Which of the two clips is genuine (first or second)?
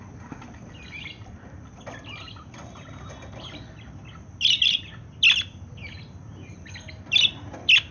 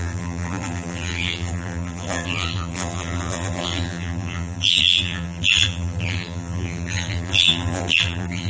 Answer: first